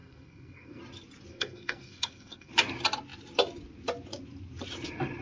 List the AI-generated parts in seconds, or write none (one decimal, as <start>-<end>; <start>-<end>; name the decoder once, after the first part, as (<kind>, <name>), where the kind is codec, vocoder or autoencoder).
0.0-0.8 (codec, SNAC); 1.3-2.5